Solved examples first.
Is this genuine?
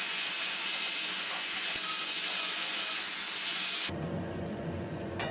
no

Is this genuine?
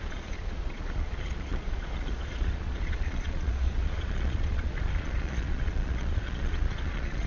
no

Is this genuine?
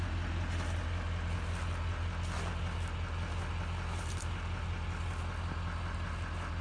yes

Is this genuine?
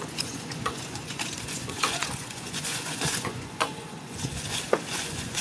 no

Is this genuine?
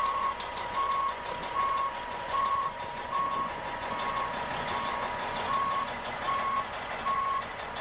no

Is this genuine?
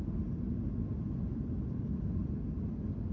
yes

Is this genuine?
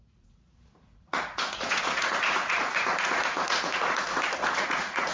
no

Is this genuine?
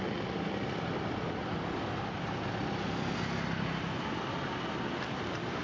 yes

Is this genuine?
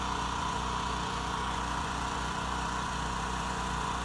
no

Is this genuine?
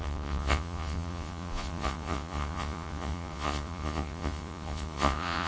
no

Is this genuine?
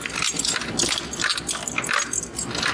yes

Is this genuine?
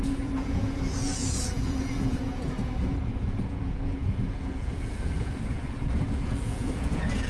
no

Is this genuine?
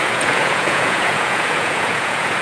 no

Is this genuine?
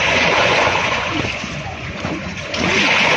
no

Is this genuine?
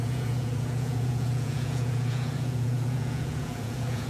no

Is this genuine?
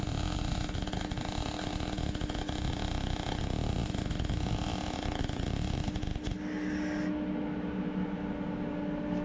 yes